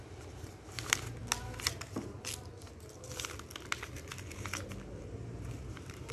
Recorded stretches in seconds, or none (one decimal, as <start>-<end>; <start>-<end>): 1.2-4.9